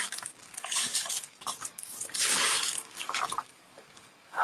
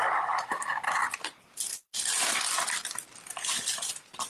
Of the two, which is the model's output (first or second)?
first